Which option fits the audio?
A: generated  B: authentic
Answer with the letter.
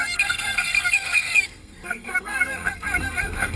A